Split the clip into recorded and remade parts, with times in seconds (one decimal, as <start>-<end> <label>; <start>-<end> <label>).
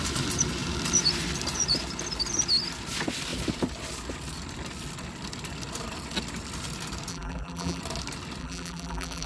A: 0.0-7.1 recorded; 7.1-7.8 remade; 7.8-8.4 recorded; 8.4-9.3 remade